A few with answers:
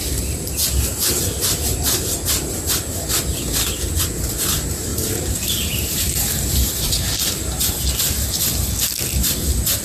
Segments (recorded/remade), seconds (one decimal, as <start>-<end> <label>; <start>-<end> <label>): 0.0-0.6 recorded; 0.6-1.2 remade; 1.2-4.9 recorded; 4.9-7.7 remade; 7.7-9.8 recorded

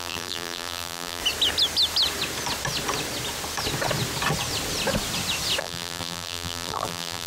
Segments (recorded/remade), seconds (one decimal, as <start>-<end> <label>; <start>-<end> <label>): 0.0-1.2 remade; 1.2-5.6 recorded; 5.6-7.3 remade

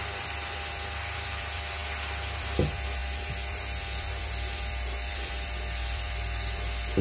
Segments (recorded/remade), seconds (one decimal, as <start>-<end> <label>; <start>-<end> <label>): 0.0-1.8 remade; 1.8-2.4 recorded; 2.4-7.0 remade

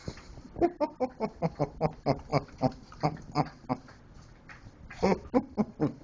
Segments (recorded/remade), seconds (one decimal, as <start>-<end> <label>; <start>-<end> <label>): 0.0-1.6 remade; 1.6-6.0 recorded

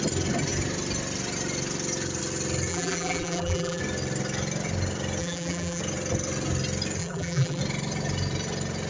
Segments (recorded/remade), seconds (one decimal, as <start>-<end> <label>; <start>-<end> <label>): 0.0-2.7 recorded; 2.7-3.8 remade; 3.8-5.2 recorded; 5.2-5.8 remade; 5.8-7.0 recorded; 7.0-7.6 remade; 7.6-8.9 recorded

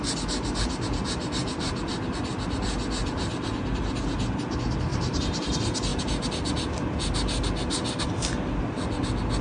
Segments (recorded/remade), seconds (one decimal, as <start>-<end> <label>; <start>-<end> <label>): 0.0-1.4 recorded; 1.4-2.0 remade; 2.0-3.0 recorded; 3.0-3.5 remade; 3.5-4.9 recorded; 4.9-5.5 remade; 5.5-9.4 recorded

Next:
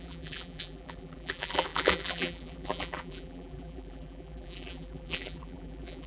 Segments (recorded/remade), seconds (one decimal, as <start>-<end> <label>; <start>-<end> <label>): 0.0-6.1 remade

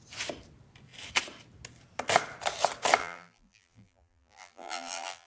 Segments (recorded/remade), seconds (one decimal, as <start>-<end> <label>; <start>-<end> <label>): 0.0-3.0 recorded; 3.0-5.3 remade